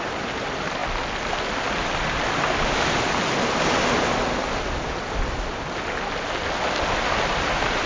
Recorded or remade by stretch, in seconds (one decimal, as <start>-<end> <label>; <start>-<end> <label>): 0.0-7.9 recorded